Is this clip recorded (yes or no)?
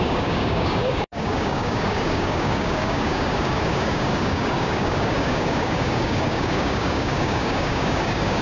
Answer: no